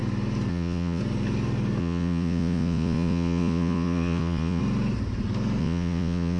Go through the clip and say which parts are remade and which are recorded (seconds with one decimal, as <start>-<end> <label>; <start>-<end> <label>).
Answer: 0.0-0.5 recorded; 0.5-1.0 remade; 1.0-1.8 recorded; 1.8-4.6 remade; 4.6-5.6 recorded; 5.6-6.4 remade